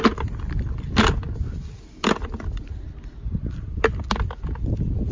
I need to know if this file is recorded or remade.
recorded